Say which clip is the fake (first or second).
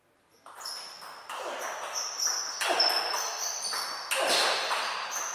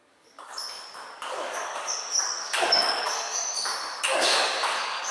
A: second